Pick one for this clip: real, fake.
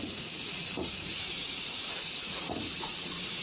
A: fake